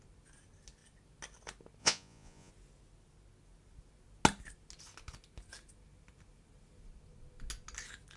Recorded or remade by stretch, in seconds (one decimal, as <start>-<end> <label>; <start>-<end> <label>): 0.0-1.8 recorded; 1.8-2.5 remade; 2.5-8.2 recorded